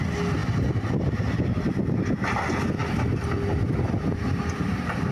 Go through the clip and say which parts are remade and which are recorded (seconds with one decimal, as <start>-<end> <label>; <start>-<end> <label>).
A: 0.0-5.1 recorded